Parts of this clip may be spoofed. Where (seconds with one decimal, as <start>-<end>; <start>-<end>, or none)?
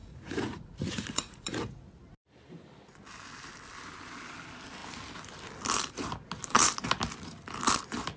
0.0-1.9